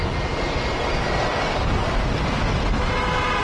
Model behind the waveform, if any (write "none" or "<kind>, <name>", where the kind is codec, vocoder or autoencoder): none